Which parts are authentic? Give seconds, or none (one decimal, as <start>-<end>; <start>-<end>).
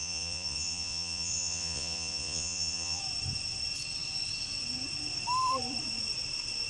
3.0-6.7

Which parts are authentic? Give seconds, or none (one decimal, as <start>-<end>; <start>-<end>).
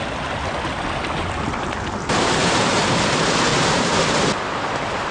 0.0-3.5; 4.3-5.1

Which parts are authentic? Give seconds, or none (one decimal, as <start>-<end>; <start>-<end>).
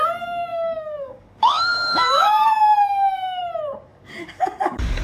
0.0-0.5; 3.4-3.9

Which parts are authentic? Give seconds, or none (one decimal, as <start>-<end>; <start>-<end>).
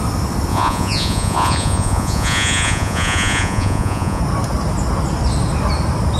0.0-0.5; 4.2-6.2